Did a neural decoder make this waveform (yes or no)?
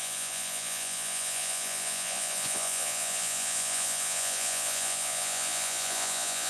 yes